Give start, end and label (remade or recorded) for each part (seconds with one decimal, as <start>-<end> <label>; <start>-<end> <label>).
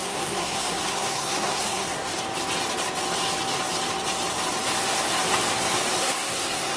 0.0-2.1 remade; 2.1-6.0 recorded; 6.0-6.8 remade